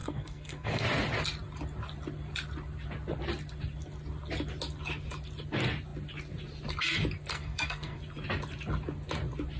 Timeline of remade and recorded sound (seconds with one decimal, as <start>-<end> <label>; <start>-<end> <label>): 0.0-0.8 remade; 0.8-7.3 recorded; 7.3-8.0 remade; 8.0-9.6 recorded